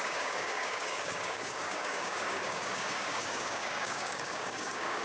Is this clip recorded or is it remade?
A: remade